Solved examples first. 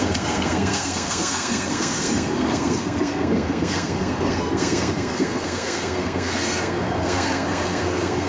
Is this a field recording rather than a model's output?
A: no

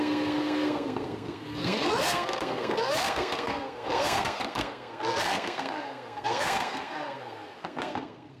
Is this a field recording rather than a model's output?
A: no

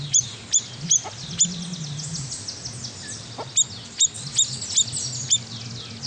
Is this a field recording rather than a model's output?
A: yes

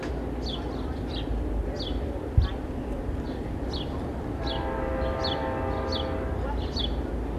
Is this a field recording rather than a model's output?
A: yes